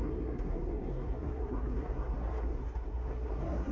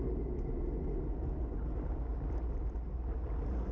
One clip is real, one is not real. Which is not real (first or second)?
first